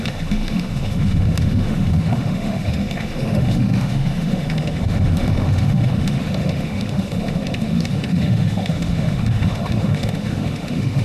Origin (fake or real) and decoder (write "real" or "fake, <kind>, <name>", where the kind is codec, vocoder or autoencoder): fake, autoencoder, DAC-VAE